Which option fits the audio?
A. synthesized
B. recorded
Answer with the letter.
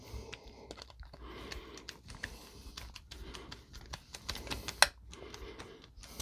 B